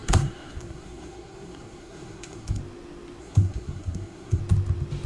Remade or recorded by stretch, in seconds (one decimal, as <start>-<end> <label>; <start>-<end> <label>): 0.0-2.6 remade; 2.6-3.2 recorded; 3.2-4.4 remade; 4.4-5.1 recorded